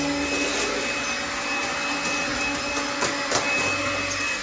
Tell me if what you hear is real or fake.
real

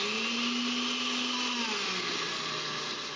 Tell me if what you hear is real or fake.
real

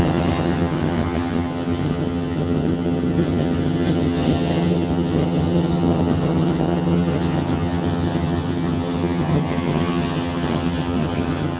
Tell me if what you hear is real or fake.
fake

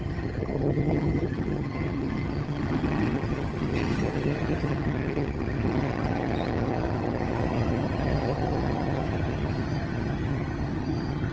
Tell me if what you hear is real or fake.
fake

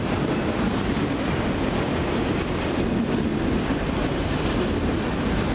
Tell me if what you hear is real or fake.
real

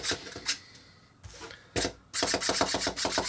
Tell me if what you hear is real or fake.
real